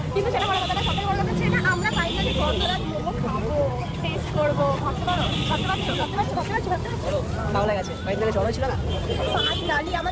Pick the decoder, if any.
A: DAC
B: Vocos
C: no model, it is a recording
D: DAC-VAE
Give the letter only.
C